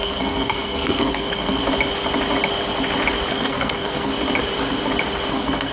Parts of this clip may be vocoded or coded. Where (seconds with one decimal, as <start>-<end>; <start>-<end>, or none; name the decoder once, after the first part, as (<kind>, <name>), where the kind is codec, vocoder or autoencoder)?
0.0-1.6 (codec, SNAC); 3.3-4.1; 5.3-5.7